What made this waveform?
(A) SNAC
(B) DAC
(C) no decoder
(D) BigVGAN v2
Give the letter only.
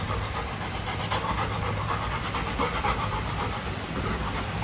D